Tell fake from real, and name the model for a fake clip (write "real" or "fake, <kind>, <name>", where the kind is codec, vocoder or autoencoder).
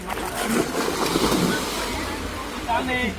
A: real